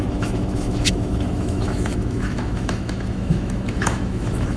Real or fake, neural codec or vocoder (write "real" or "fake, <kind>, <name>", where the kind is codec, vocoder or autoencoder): fake, autoencoder, DAC-VAE